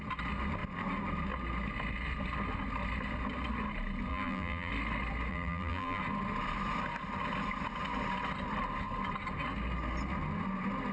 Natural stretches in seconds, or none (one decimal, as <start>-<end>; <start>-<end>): 0.0-4.1; 4.7-5.3; 6.0-10.9